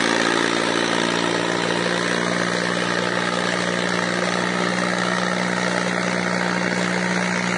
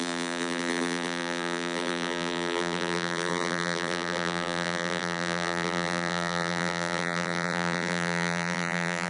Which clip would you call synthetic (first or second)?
second